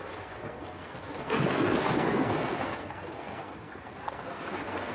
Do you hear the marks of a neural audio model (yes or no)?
yes